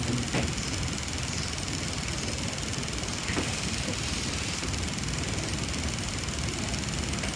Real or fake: real